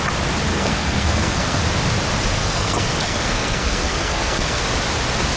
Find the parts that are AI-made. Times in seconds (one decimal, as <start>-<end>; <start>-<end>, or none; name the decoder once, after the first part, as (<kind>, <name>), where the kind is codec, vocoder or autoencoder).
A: 0.5-1.6 (codec, SNAC); 2.4-4.6